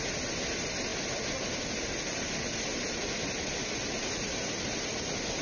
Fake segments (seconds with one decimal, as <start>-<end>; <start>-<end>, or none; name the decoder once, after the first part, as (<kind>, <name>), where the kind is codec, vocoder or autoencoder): none